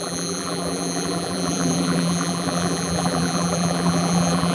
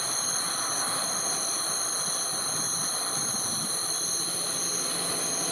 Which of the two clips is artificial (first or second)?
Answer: first